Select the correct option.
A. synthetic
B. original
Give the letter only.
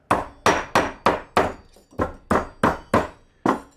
B